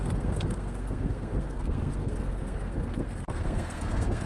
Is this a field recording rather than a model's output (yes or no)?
no